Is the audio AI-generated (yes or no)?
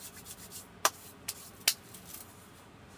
no